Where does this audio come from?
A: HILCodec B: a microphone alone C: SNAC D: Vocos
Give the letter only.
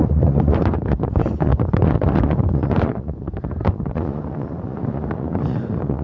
D